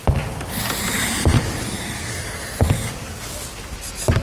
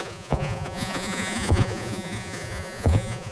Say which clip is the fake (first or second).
second